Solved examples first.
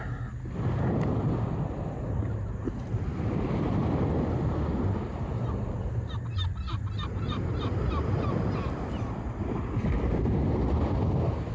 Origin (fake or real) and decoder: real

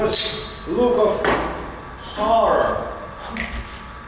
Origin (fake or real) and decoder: real